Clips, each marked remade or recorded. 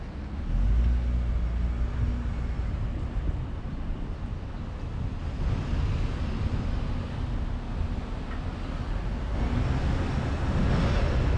recorded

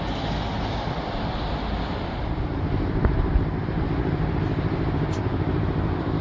recorded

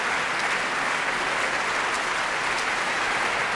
recorded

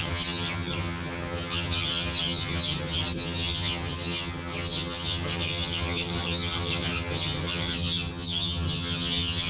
remade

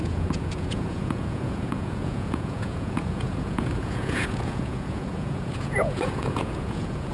remade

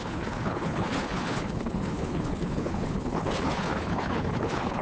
remade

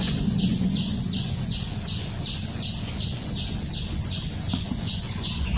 remade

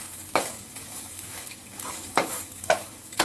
remade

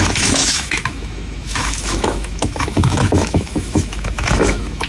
remade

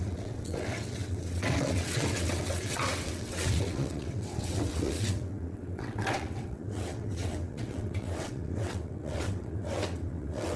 remade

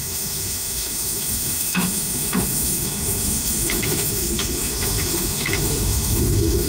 remade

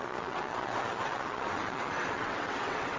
remade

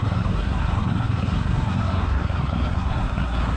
remade